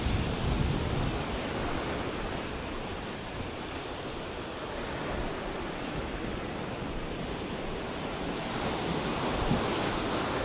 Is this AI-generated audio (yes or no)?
no